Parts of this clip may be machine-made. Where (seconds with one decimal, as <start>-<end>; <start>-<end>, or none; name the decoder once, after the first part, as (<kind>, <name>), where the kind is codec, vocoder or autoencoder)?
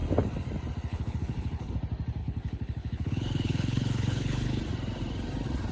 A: 0.9-1.7 (codec, HILCodec); 2.2-4.6